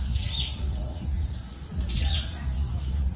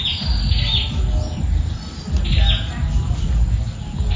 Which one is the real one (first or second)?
second